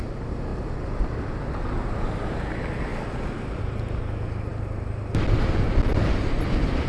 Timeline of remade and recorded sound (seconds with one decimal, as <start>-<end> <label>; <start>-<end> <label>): 0.0-6.9 recorded